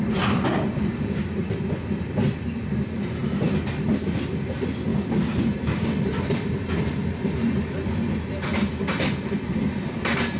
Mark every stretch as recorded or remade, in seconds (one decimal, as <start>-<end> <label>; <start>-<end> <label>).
0.0-10.4 recorded